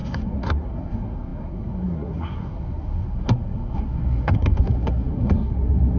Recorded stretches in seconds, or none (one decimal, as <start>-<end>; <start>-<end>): none